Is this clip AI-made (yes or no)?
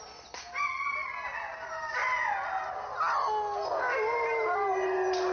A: no